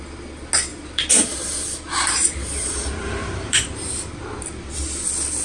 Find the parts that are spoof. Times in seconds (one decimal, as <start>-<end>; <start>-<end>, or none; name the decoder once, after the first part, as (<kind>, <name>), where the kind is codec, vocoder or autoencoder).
0.7-3.9 (vocoder, BigVGAN v2)